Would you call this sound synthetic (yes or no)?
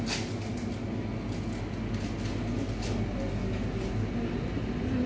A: no